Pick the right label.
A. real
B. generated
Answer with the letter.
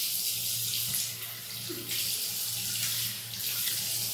A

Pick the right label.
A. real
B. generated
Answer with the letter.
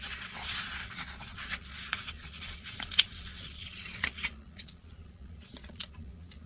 B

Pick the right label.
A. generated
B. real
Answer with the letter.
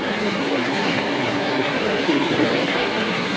A